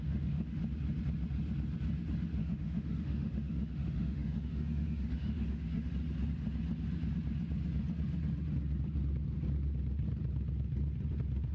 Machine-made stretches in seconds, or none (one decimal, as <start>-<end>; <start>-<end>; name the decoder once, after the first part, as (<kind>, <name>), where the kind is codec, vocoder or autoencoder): 0.0-0.6 (autoencoder, DAC-VAE); 2.4-5.9